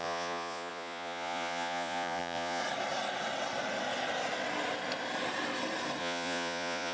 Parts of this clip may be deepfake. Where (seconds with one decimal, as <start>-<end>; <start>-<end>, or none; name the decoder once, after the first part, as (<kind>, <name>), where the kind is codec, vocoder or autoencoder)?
0.0-2.6 (vocoder, Vocos); 6.0-6.9